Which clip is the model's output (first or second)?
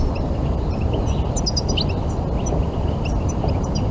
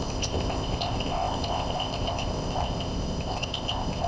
second